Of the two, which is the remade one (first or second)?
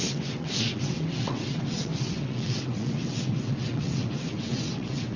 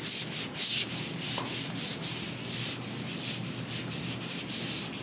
first